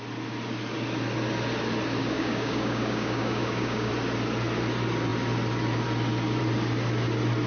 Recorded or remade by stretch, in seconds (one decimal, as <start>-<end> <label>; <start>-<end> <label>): 0.0-2.0 recorded; 2.0-3.9 remade; 3.9-7.5 recorded